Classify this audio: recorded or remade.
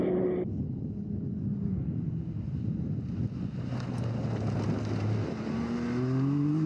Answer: recorded